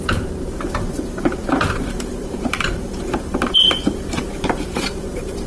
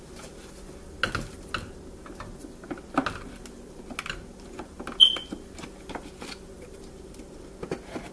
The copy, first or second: first